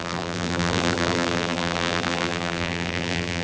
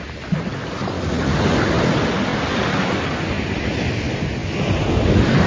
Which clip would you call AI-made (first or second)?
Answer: first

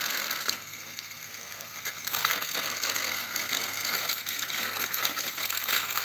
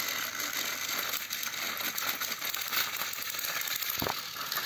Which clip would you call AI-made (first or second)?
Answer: first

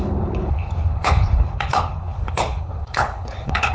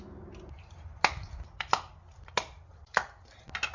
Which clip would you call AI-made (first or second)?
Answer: first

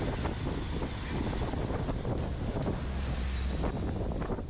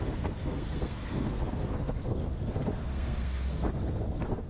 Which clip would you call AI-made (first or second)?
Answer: second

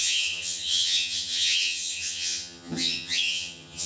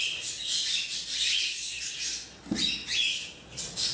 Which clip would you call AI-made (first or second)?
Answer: first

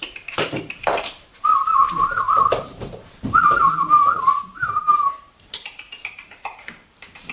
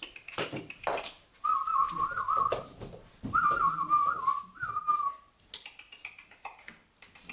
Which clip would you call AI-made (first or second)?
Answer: first